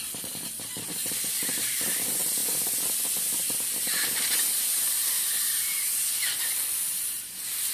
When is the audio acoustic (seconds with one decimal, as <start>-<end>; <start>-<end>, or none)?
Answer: 2.4-7.0